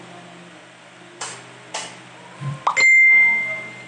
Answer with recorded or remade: recorded